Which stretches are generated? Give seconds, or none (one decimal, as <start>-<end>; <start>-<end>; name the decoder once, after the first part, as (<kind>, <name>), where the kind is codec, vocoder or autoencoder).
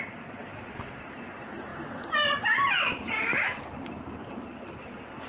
0.4-0.9 (vocoder, BigVGAN v2); 1.7-5.3